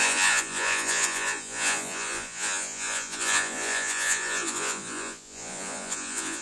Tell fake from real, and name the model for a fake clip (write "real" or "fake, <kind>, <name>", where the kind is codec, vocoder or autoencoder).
fake, vocoder, Vocos